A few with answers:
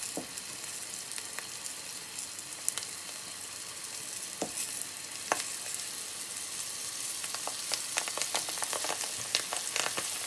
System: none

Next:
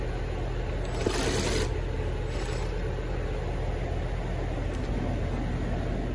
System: none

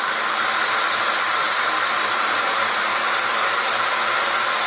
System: vocoder, BigVGAN v2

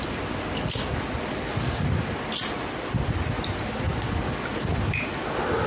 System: none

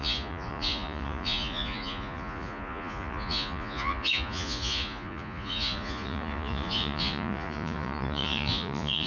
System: vocoder, Vocos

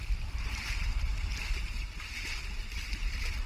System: none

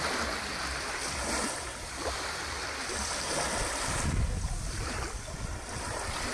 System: none